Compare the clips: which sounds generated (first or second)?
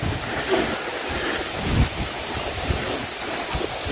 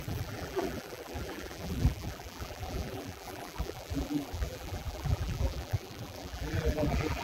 second